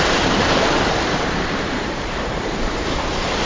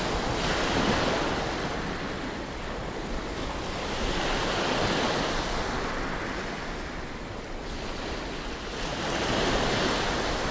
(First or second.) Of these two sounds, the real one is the second